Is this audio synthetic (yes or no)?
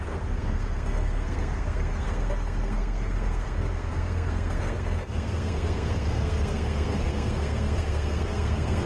yes